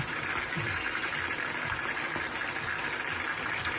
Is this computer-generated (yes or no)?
no